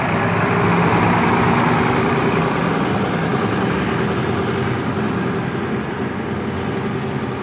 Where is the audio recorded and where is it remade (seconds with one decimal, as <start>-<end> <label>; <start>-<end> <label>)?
0.0-7.4 recorded